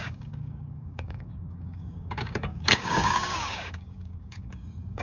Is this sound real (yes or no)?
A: no